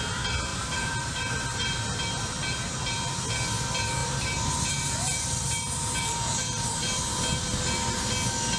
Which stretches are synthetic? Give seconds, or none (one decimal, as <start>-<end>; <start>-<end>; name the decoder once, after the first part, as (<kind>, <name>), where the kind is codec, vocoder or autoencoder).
0.5-1.8 (vocoder, BigVGAN v2); 4.0-7.0